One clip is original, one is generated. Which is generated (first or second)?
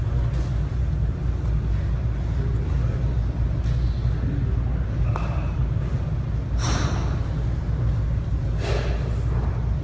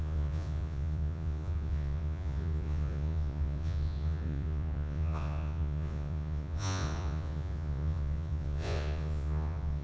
second